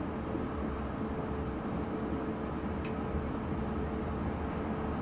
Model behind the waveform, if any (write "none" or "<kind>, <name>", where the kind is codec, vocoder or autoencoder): none